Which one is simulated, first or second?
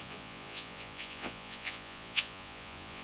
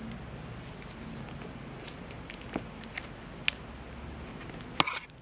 first